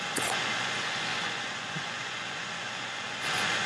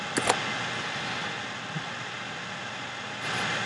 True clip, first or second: second